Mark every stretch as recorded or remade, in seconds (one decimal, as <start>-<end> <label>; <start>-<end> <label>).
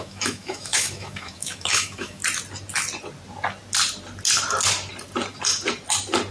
0.0-2.2 remade; 2.2-6.3 recorded